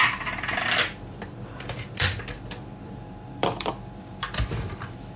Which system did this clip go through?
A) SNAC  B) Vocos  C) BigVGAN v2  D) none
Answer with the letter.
C